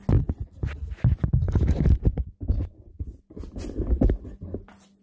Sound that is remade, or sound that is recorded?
recorded